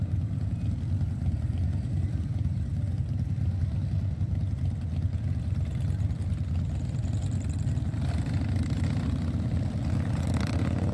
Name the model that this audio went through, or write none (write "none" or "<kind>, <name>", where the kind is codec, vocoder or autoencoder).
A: none